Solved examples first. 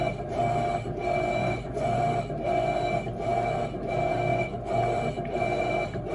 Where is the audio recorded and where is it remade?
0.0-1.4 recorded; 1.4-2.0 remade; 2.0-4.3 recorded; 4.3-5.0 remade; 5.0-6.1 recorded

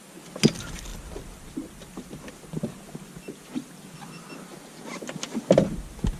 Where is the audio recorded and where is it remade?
0.0-0.9 recorded; 0.9-2.3 remade; 2.3-6.2 recorded

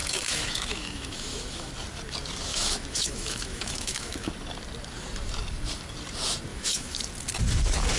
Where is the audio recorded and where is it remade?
0.0-1.7 remade; 1.7-2.5 recorded; 2.5-4.3 remade; 4.3-6.5 recorded; 6.5-7.0 remade; 7.0-8.0 recorded

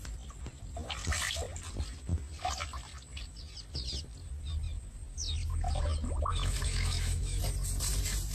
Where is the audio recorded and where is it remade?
0.0-6.3 recorded; 6.3-7.4 remade; 7.4-8.3 recorded

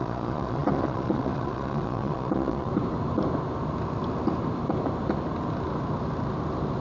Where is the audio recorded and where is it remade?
0.0-2.7 remade; 2.7-6.8 recorded